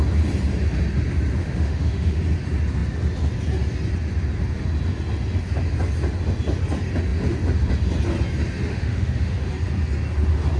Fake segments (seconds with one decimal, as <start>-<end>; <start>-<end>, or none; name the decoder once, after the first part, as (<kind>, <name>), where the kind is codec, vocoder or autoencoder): 1.4-2.2 (autoencoder, DAC-VAE); 8.7-9.5